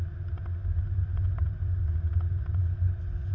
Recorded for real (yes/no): yes